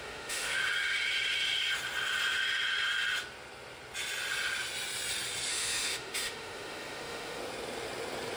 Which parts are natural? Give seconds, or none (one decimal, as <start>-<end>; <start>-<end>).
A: 0.6-5.5; 7.4-8.4